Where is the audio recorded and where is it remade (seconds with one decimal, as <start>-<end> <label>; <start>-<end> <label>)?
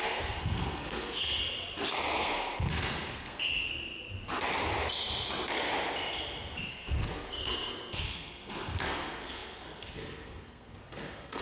0.0-1.4 remade; 1.4-2.1 recorded; 2.1-3.7 remade; 3.7-6.7 recorded; 6.7-11.4 remade